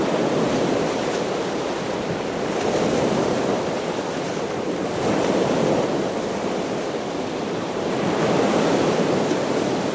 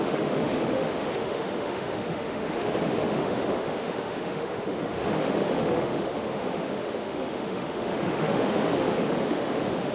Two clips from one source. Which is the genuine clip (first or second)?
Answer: first